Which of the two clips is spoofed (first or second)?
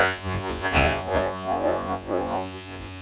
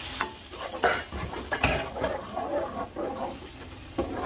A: first